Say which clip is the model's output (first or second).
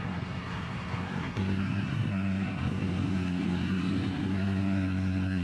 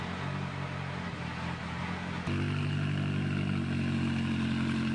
first